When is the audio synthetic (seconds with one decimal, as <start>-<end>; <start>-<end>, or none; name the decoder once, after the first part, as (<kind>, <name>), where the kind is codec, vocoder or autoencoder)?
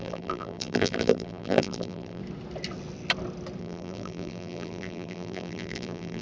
0.0-2.2 (vocoder, BigVGAN v2); 3.6-6.2